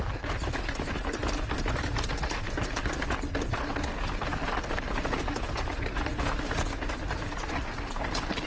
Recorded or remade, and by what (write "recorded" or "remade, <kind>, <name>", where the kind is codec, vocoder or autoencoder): recorded